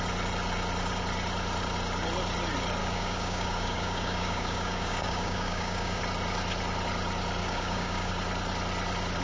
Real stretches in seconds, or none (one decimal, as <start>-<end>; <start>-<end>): 0.0-2.8; 6.0-7.4; 8.1-9.2